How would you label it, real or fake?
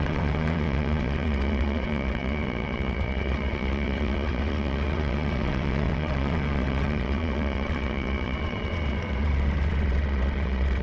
fake